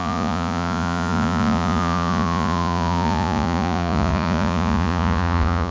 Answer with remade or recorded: remade